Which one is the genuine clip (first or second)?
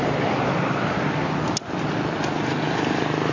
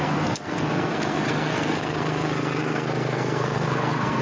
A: first